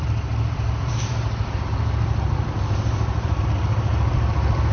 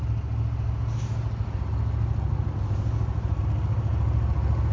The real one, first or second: second